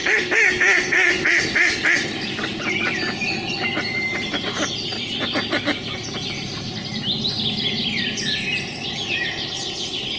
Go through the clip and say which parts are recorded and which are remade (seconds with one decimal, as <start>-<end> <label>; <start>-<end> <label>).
0.0-10.2 recorded